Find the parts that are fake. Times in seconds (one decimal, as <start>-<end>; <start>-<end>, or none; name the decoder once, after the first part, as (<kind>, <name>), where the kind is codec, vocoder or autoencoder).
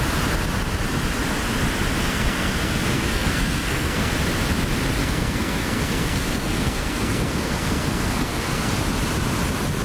2.0-4.1 (codec, SNAC); 5.0-8.7